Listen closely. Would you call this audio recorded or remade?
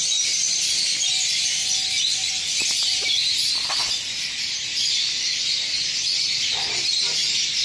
recorded